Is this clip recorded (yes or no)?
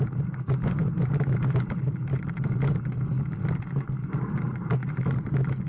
yes